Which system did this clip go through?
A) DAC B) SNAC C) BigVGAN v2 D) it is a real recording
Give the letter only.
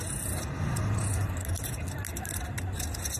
D